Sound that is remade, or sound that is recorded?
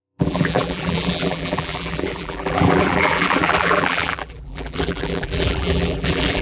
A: remade